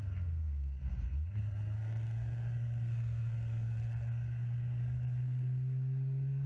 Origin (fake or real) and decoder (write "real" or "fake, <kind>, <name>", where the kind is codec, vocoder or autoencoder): fake, codec, SNAC